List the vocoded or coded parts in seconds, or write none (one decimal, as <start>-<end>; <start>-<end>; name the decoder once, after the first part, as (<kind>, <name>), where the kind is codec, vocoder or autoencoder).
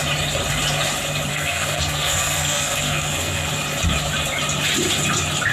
1.3-3.5 (codec, SNAC)